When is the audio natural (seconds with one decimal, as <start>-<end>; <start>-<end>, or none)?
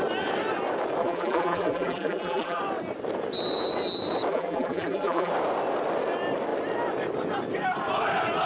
0.0-1.0; 2.6-4.3; 5.3-8.5